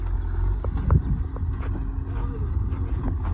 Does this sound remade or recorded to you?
recorded